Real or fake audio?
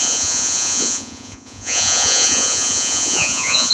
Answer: fake